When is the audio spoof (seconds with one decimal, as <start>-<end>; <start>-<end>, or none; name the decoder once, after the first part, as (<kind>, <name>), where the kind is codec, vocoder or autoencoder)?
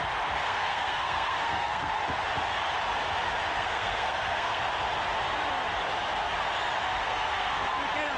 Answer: 0.4-1.9 (codec, SNAC); 3.5-4.6; 7.0-7.7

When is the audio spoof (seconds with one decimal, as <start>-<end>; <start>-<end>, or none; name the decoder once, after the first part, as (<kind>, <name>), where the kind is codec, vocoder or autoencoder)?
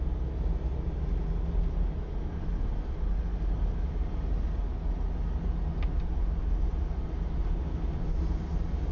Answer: none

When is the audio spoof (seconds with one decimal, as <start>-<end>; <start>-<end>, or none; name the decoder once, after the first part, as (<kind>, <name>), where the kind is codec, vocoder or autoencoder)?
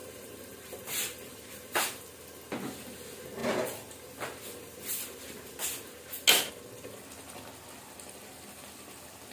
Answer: 0.0-2.0 (vocoder, BigVGAN v2)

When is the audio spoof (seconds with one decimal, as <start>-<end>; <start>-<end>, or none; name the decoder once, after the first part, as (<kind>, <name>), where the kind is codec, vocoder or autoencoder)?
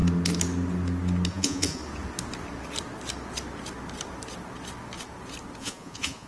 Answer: 1.3-1.8 (vocoder, Vocos); 5.6-6.3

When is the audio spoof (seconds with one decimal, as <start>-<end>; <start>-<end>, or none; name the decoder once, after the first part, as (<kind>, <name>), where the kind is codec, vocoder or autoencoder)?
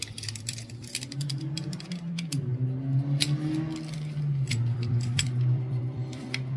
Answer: 0.0-2.5 (vocoder, BigVGAN v2); 4.5-6.6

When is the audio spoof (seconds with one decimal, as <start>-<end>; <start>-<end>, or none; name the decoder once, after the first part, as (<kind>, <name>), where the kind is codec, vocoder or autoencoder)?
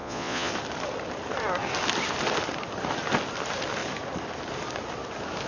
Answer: 0.0-0.5 (vocoder, Vocos)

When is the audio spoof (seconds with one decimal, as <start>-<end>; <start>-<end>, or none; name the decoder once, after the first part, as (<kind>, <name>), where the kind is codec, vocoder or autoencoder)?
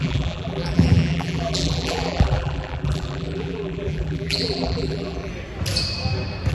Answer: 0.0-5.3 (vocoder, BigVGAN v2)